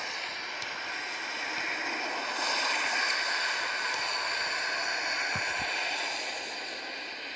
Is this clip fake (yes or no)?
no